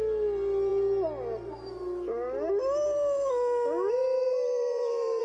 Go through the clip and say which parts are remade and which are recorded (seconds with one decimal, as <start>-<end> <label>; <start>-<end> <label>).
0.0-4.0 recorded; 4.0-5.2 remade